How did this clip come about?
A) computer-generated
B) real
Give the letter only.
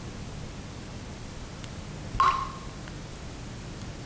B